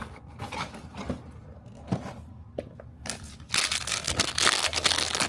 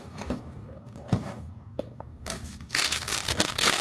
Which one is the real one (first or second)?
first